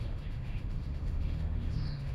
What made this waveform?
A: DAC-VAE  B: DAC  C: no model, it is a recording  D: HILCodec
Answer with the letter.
A